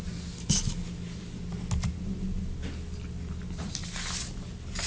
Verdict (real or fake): real